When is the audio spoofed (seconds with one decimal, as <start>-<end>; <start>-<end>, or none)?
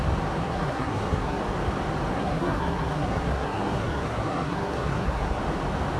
0.4-1.4; 2.1-5.4